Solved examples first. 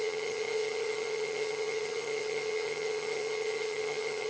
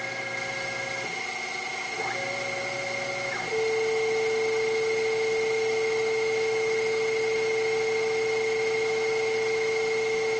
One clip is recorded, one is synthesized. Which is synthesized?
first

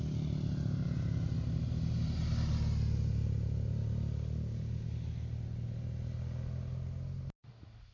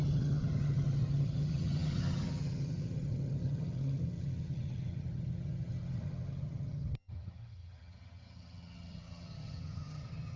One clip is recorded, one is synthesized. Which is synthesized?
second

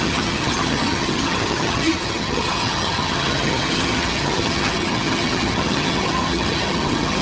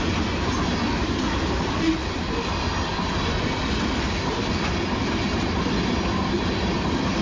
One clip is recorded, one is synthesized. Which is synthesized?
first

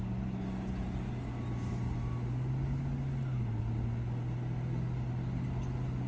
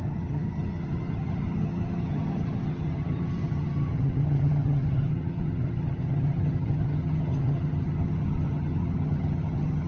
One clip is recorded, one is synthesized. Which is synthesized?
second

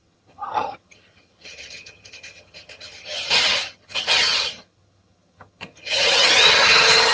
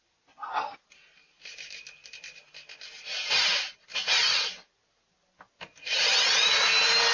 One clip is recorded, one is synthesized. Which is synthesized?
first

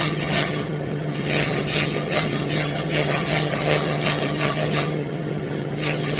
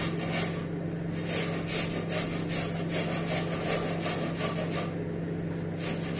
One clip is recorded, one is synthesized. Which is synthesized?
first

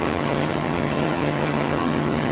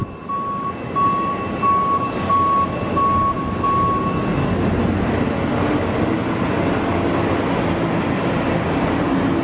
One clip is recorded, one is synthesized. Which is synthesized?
first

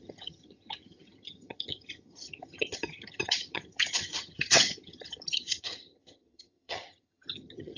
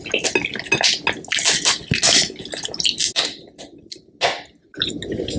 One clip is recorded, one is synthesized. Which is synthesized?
first